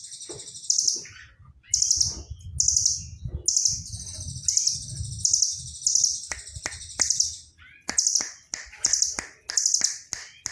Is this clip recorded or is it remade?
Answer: recorded